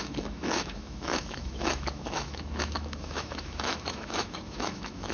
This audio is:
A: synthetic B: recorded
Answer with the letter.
A